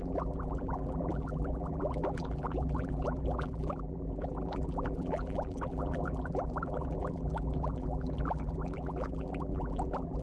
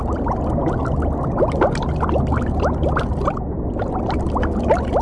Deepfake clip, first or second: first